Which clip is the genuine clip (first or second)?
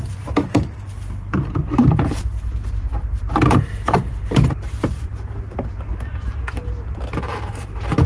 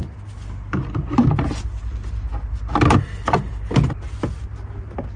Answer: second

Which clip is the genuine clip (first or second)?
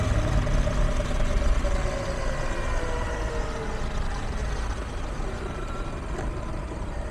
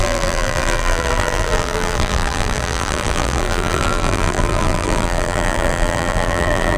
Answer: first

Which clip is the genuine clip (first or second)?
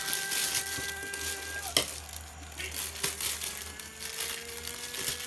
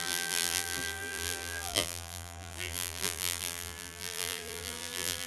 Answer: first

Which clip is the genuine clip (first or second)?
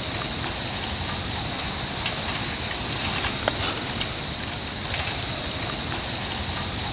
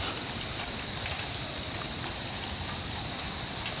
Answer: first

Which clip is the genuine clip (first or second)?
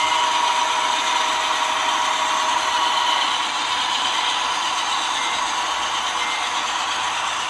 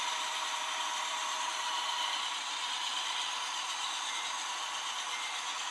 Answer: first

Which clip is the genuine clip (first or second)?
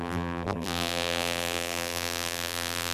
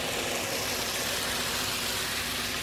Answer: second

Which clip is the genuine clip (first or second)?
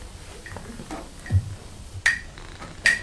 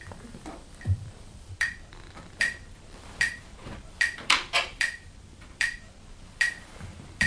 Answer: first